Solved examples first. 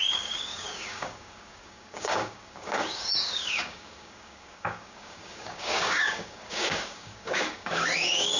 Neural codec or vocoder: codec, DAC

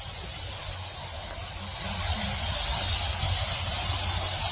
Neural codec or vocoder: none